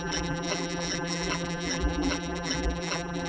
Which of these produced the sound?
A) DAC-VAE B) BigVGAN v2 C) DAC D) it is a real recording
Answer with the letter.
B